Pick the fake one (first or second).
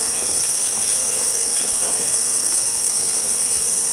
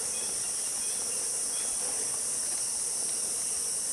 first